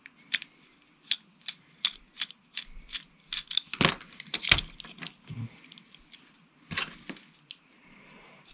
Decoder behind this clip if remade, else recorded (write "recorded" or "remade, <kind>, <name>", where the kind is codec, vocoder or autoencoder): recorded